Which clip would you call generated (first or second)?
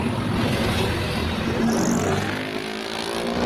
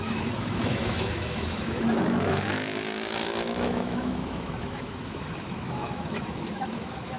second